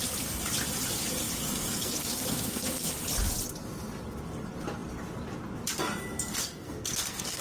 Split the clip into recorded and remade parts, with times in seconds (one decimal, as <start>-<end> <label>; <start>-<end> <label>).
0.0-1.4 recorded; 1.4-2.9 remade; 2.9-6.3 recorded; 6.3-7.4 remade